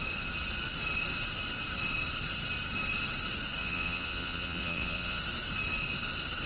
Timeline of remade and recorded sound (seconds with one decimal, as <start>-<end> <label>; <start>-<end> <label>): 0.0-3.6 recorded; 3.6-5.2 remade; 5.2-6.5 recorded